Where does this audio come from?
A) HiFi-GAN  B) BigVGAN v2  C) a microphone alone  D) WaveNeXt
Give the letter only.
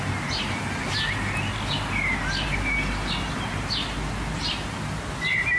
C